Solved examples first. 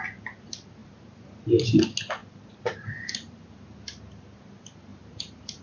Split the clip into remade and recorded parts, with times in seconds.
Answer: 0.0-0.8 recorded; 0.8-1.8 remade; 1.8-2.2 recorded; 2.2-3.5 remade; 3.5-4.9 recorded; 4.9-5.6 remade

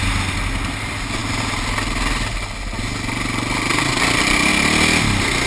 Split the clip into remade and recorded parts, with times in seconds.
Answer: 0.0-5.5 recorded

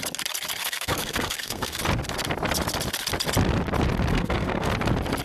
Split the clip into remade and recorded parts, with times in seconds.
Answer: 0.0-0.6 recorded; 0.6-1.8 remade; 1.8-4.1 recorded; 4.1-4.7 remade; 4.7-5.2 recorded

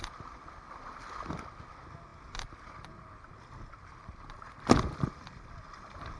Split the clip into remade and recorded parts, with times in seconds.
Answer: 0.0-6.2 recorded